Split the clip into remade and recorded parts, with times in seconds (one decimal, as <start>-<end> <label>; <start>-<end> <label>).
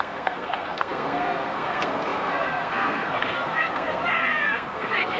0.0-5.2 remade